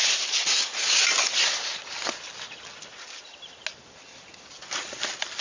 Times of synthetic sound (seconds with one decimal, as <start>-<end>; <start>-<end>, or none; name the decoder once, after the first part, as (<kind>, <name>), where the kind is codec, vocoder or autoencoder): none